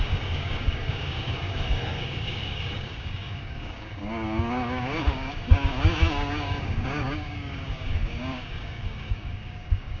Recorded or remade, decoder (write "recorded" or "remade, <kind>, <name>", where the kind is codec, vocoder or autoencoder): remade, codec, DAC